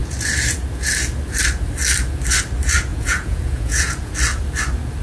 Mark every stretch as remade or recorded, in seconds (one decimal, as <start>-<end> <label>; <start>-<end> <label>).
0.0-2.9 recorded; 2.9-4.1 remade; 4.1-5.0 recorded